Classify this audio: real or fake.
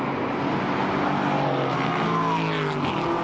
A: real